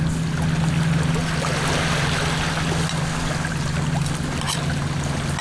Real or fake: real